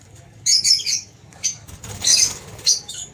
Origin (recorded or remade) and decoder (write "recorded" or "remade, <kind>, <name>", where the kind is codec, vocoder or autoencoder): remade, codec, DAC